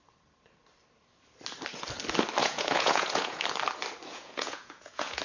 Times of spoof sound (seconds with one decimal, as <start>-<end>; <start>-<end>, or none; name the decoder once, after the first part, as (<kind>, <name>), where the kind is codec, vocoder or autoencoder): 2.4-3.4 (vocoder, Vocos); 4.1-5.2